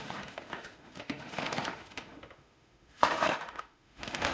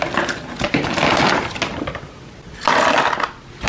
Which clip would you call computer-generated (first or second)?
first